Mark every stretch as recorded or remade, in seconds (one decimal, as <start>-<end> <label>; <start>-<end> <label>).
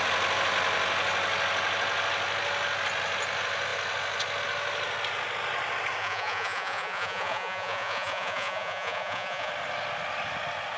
0.0-6.0 recorded; 6.0-9.5 remade; 9.5-10.8 recorded